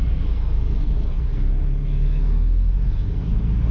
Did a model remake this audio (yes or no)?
yes